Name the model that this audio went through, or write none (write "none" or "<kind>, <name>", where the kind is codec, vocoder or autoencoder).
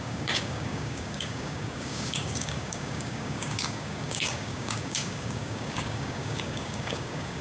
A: codec, DAC